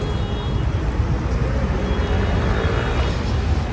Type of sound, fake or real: real